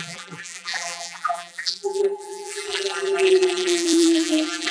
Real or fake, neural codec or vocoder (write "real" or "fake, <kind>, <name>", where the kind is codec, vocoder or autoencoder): fake, vocoder, BigVGAN v2